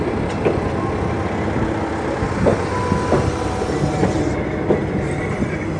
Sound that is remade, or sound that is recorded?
recorded